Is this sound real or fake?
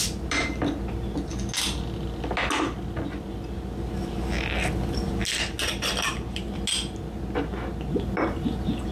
real